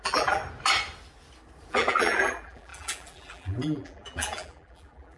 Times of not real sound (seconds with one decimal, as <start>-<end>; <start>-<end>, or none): 0.0-0.4; 1.7-5.2